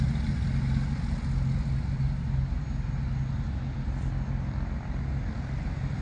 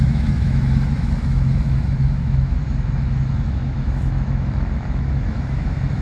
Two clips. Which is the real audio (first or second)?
first